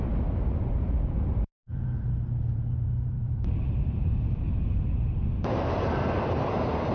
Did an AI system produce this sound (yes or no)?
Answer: yes